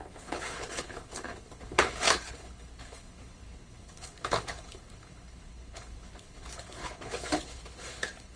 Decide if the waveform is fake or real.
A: fake